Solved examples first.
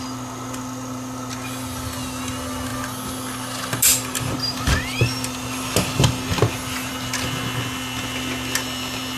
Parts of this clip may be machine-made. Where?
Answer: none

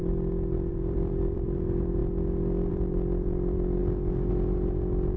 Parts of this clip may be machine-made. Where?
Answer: 0.7-2.0 (vocoder, BigVGAN v2); 2.7-3.8; 4.3-5.2

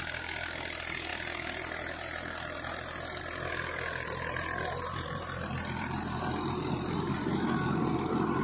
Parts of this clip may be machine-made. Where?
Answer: 0.0-1.1 (vocoder, BigVGAN v2); 3.2-8.4

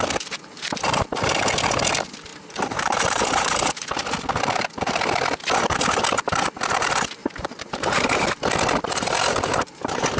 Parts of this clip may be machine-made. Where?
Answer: 2.3-3.6 (vocoder, BigVGAN v2); 7.2-8.4; 9.0-10.2

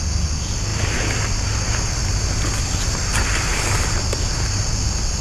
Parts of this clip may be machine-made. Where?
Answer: 0.7-2.9 (vocoder, BigVGAN v2)

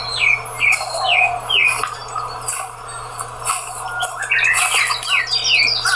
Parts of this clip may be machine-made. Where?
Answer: none